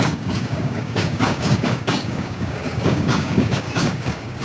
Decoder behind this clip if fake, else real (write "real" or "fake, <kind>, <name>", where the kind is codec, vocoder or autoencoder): fake, codec, DAC